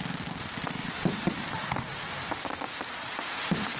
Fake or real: real